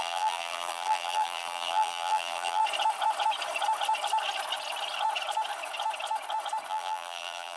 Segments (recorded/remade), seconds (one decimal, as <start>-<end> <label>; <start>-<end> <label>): 0.0-2.6 remade; 2.6-6.7 recorded; 6.7-7.6 remade